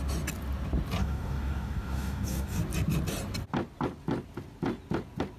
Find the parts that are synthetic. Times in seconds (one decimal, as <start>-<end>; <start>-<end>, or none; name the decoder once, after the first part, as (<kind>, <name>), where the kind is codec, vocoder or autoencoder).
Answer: 1.0-2.6 (codec, DAC)